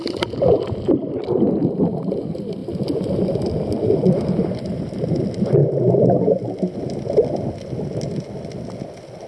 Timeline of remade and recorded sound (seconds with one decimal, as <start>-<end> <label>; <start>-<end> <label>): 0.0-2.6 remade; 2.6-3.2 recorded; 3.2-5.6 remade; 5.6-9.3 recorded